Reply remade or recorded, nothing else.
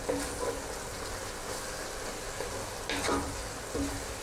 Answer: recorded